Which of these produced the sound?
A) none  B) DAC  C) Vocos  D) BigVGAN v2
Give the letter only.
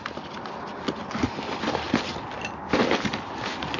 A